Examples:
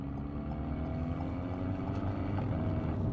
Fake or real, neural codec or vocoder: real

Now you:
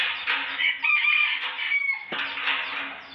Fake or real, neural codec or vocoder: real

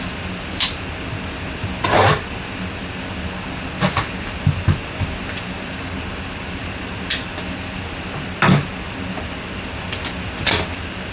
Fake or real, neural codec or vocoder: real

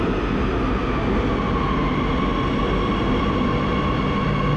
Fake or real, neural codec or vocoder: real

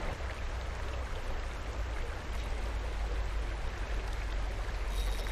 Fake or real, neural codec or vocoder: real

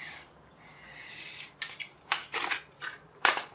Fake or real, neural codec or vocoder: fake, vocoder, BigVGAN v2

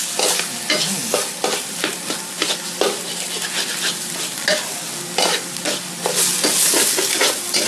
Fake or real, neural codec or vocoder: real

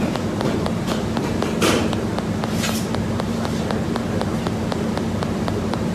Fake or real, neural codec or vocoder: fake, vocoder, BigVGAN v2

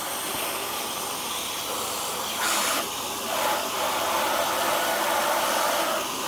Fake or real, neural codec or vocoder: real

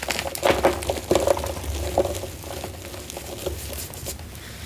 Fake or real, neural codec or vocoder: real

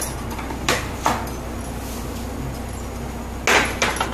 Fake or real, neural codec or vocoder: real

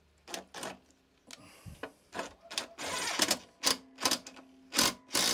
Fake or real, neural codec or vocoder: real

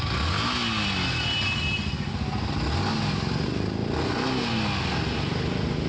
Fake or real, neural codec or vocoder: real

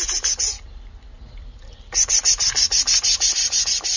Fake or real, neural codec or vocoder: fake, vocoder, BigVGAN v2